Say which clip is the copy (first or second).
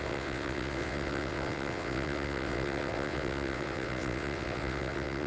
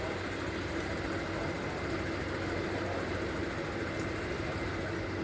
first